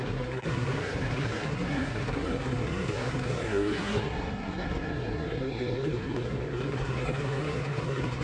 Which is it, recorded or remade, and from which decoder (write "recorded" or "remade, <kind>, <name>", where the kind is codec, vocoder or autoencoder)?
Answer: remade, codec, SNAC